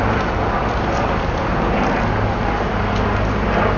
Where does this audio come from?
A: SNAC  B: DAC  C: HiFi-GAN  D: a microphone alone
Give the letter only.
D